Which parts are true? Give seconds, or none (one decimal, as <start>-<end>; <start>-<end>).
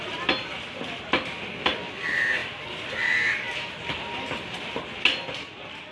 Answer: 0.0-5.9